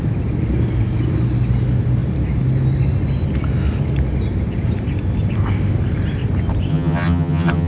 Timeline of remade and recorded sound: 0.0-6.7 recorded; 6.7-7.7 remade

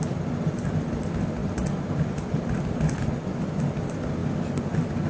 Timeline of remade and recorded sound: 0.0-5.1 recorded

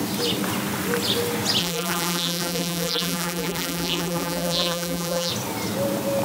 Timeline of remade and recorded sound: 0.0-1.6 recorded; 1.6-5.3 remade; 5.3-6.2 recorded

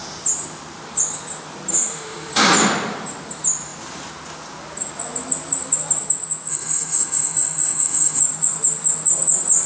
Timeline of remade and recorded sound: 0.0-1.7 recorded; 1.7-2.3 remade; 2.3-6.5 recorded; 6.5-8.2 remade; 8.2-9.7 recorded

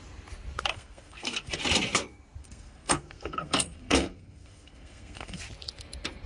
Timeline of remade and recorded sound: 0.0-0.7 recorded; 0.7-1.6 remade; 1.6-2.4 recorded; 2.4-5.4 remade; 5.4-6.3 recorded

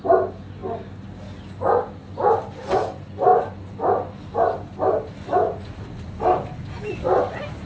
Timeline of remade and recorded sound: 0.0-7.7 recorded